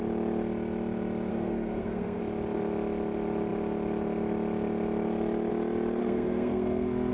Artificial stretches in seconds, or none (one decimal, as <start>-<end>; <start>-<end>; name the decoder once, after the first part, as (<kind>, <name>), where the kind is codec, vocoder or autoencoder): 1.3-2.2 (codec, SNAC); 6.0-7.1